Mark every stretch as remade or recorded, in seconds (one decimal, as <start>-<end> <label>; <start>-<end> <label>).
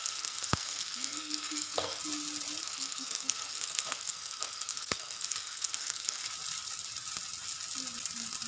0.0-2.0 remade; 2.0-2.6 recorded; 2.6-6.2 remade; 6.2-8.5 recorded